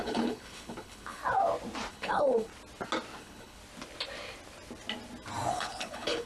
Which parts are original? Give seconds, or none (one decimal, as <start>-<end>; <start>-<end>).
1.2-1.9; 2.5-3.2; 3.6-5.5